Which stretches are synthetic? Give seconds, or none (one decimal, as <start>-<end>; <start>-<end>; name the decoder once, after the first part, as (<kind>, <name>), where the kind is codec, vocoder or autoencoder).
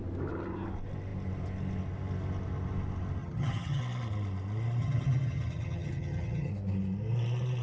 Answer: 3.2-3.8 (vocoder, HiFi-GAN); 4.8-6.5